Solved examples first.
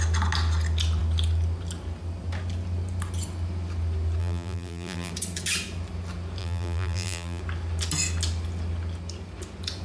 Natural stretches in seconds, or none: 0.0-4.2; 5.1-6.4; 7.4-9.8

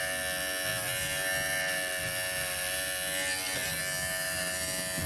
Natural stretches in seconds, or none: 0.0-5.1